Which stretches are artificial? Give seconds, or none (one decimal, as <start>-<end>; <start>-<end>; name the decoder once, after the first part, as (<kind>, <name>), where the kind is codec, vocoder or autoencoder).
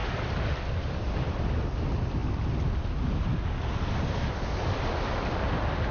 none